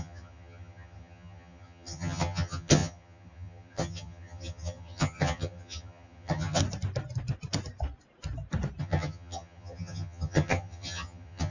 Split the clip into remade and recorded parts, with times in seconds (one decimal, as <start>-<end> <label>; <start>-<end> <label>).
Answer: 0.0-6.6 remade; 6.6-8.8 recorded; 8.8-11.5 remade